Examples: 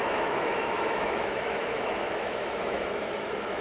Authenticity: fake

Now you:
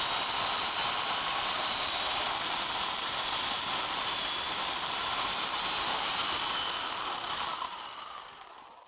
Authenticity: fake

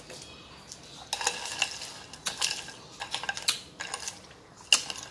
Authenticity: real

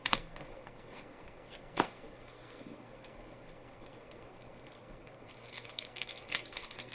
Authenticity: fake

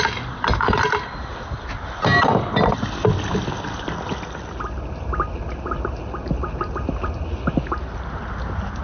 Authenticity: real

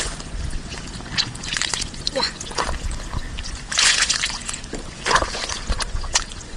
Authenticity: fake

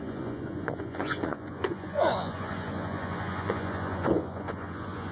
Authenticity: fake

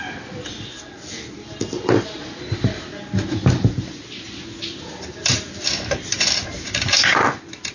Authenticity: real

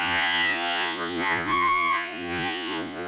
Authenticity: fake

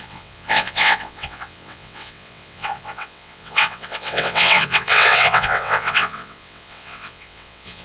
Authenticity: fake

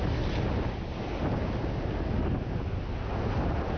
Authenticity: real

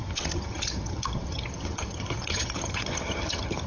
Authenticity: fake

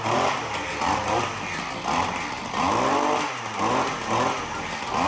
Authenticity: real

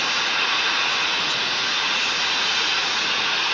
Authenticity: fake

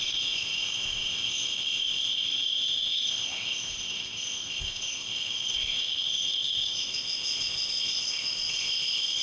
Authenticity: fake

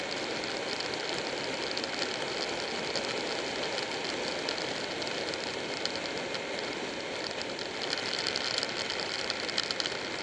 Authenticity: real